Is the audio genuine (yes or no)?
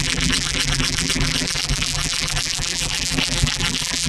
no